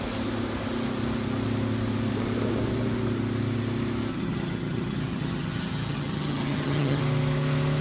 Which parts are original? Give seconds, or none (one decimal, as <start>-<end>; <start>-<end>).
0.0-4.1; 7.0-7.8